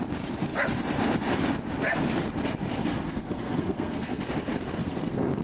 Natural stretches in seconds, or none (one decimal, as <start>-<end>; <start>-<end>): 0.0-2.8; 4.2-4.8